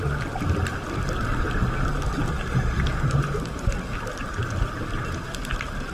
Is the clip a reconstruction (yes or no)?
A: no